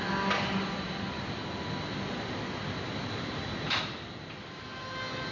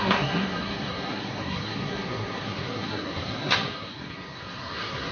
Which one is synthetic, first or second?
second